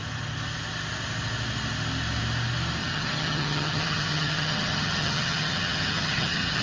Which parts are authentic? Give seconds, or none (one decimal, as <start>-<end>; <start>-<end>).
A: 0.0-2.8